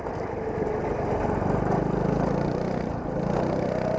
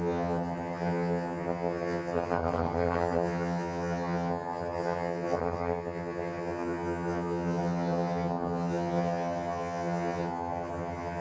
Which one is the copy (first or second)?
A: second